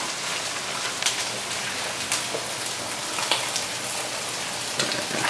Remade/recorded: recorded